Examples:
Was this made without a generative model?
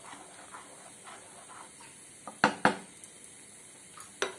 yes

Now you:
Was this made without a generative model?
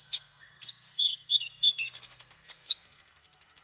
no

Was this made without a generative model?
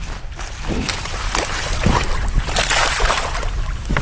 yes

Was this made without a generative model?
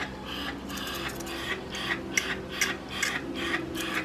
yes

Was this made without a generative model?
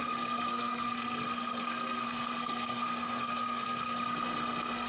no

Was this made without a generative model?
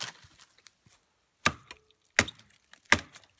yes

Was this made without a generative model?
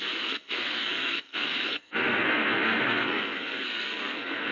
no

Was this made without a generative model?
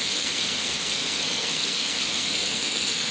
no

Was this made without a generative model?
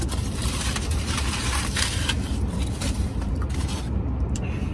yes